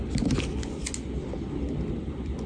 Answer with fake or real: real